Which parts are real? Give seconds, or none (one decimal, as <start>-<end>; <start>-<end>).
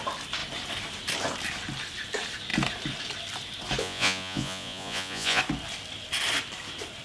0.0-3.8; 5.4-7.0